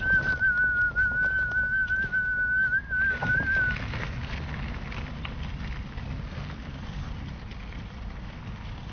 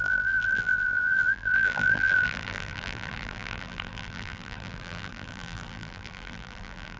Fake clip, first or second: second